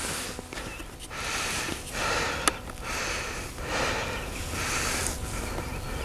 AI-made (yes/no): no